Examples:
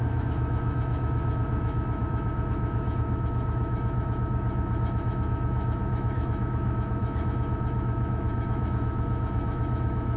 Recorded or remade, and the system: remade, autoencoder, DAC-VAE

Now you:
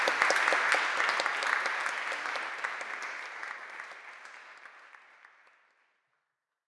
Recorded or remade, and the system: recorded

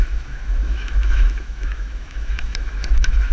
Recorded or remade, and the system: remade, autoencoder, DAC-VAE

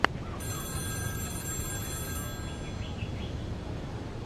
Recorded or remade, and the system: recorded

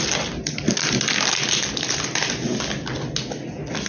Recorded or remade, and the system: recorded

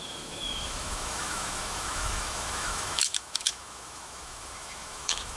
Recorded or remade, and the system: remade, autoencoder, DAC-VAE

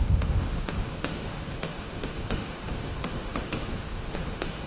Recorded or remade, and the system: remade, autoencoder, DAC-VAE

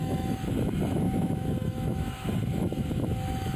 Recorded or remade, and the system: remade, autoencoder, DAC-VAE